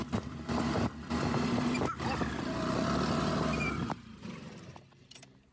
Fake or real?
real